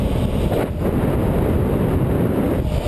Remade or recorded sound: recorded